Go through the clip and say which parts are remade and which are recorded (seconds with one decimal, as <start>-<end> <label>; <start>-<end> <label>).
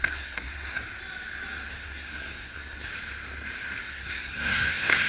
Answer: 0.0-0.8 remade; 0.8-1.7 recorded; 1.7-2.9 remade; 2.9-3.8 recorded; 3.8-5.1 remade